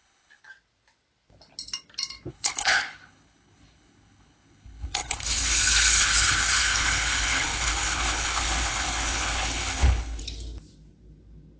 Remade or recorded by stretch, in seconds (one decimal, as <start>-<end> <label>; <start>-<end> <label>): 0.0-0.4 remade; 0.4-2.3 recorded; 2.3-10.2 remade; 10.2-11.6 recorded